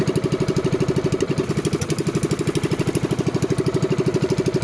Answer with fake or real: real